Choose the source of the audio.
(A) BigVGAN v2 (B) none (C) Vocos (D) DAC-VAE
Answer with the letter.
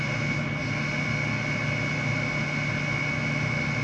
B